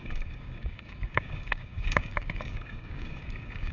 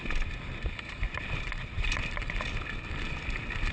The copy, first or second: first